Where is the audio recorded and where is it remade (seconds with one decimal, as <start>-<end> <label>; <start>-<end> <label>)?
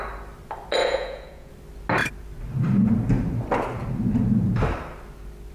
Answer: 0.0-0.8 recorded; 0.8-1.5 remade; 1.5-5.5 recorded